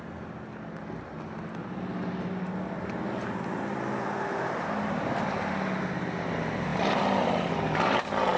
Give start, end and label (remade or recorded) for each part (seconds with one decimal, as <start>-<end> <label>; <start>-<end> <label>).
0.0-8.4 recorded